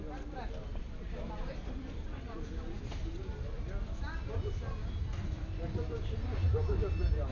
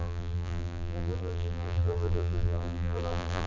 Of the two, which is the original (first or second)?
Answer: first